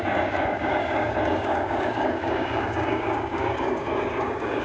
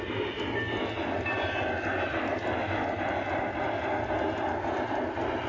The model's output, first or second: first